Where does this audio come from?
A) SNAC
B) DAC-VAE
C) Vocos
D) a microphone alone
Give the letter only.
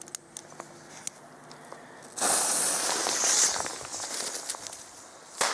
D